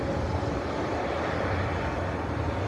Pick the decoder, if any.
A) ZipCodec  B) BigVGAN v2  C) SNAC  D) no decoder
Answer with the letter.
D